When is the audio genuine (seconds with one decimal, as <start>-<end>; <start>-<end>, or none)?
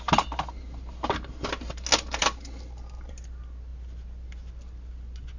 0.0-5.4